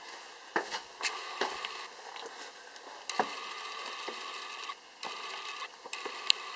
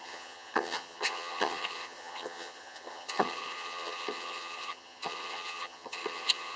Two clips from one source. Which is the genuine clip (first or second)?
first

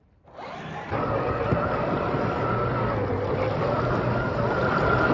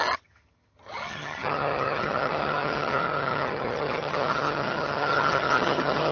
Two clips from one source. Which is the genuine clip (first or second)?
first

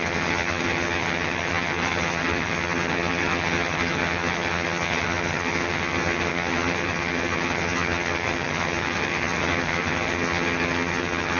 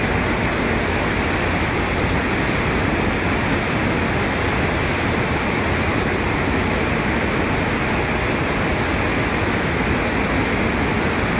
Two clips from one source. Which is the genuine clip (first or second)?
second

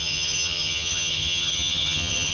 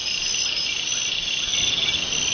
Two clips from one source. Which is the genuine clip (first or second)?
second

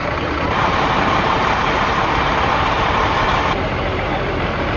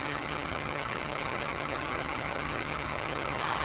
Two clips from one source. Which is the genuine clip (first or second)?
first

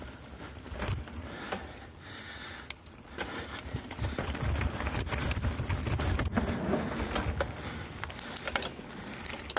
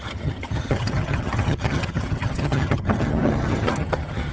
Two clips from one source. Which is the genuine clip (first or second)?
first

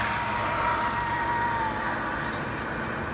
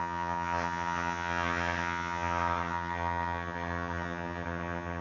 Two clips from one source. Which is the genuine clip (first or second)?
first